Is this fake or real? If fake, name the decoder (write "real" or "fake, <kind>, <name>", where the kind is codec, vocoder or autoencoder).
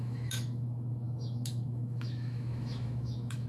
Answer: fake, autoencoder, DAC-VAE